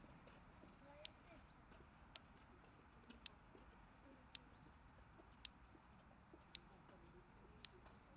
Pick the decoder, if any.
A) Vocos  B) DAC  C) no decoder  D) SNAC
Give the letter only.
C